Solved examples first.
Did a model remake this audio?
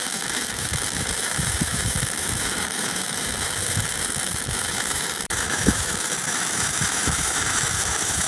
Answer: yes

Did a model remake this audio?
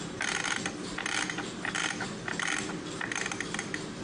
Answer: no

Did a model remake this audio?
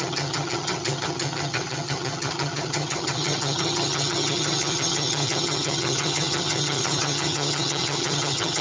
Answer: yes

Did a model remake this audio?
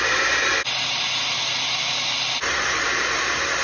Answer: no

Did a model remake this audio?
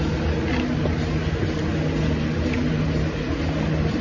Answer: no